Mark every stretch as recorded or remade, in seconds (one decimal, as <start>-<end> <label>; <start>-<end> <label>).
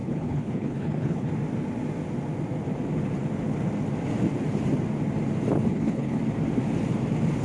0.0-1.3 remade; 1.3-5.7 recorded; 5.7-6.2 remade; 6.2-7.4 recorded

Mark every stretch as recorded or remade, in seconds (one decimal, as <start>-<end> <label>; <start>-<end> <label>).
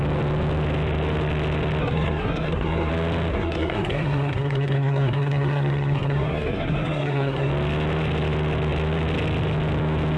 0.0-1.8 recorded; 1.8-2.9 remade; 2.9-3.3 recorded; 3.3-7.5 remade; 7.5-10.2 recorded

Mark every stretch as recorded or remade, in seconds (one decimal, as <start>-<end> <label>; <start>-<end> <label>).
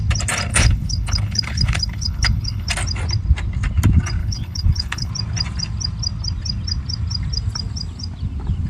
0.0-0.5 recorded; 0.5-2.7 remade; 2.7-4.2 recorded; 4.2-5.1 remade; 5.1-8.7 recorded